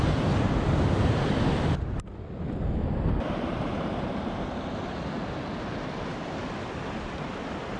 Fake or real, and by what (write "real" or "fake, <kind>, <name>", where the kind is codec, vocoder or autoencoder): real